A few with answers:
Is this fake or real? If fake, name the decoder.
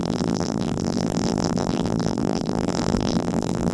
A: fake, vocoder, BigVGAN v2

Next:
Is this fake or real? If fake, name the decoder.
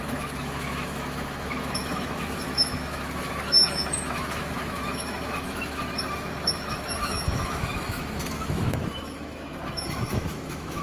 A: fake, autoencoder, DAC-VAE